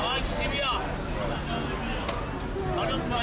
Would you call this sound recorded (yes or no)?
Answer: yes